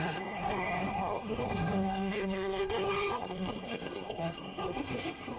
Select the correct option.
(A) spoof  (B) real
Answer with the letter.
A